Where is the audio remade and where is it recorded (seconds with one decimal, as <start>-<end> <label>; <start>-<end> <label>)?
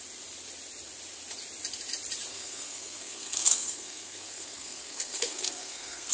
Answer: 0.0-2.3 recorded; 2.3-6.1 remade